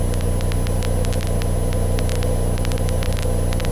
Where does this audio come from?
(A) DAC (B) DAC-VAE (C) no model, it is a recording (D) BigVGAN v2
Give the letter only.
C